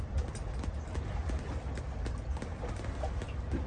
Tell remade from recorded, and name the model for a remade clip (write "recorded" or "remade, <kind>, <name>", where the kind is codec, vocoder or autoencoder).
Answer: recorded